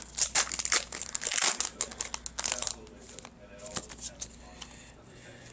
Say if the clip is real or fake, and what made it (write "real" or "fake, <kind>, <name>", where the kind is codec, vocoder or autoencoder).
real